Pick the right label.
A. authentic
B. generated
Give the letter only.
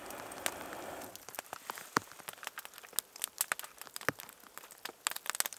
A